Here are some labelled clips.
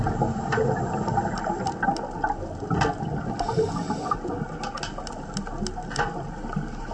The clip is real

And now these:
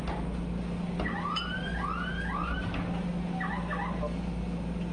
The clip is real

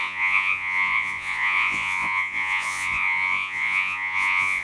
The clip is fake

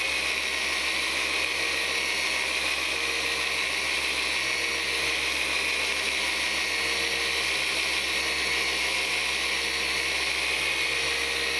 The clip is real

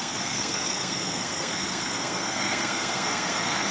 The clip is fake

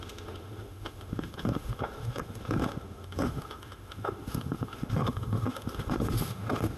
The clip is fake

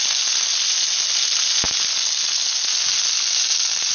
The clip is real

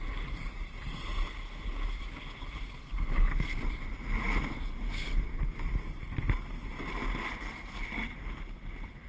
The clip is real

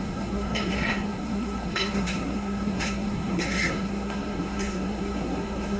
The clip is fake